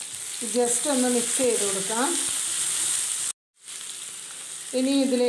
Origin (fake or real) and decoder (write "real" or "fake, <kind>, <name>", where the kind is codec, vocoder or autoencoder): real